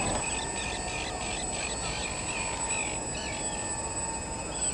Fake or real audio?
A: real